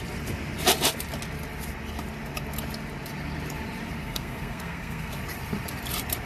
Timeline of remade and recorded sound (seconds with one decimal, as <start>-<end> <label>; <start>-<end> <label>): 0.0-4.0 recorded; 4.0-5.1 remade; 5.1-6.3 recorded